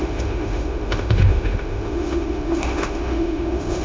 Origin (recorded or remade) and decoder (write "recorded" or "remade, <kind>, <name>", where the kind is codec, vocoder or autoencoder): remade, autoencoder, DAC-VAE